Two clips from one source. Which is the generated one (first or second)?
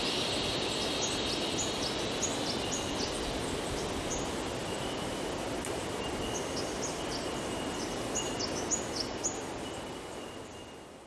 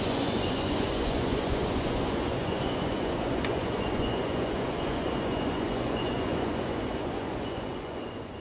second